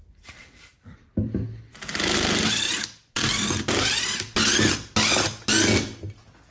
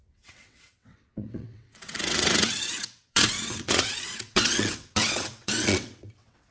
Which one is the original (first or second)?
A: first